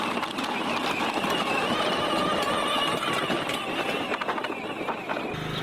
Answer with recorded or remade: recorded